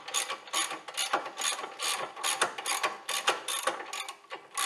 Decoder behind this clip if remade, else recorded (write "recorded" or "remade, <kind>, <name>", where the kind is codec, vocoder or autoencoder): recorded